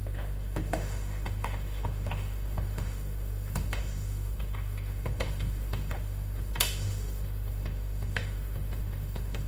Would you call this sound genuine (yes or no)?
no